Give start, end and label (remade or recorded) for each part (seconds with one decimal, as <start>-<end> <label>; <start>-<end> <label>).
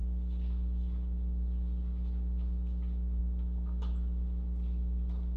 0.0-5.4 recorded